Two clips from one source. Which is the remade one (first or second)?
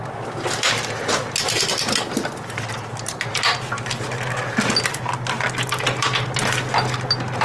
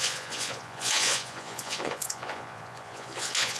second